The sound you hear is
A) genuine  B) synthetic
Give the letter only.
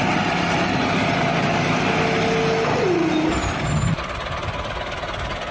A